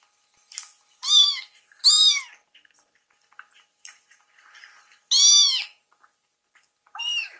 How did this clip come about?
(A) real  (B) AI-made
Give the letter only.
A